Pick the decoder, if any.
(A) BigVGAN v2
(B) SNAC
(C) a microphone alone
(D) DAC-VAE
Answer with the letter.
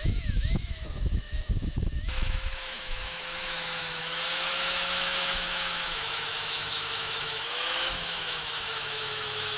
D